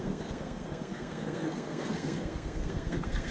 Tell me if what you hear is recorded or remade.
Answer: remade